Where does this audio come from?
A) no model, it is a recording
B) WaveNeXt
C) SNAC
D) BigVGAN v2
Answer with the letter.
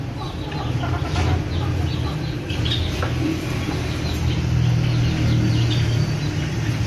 A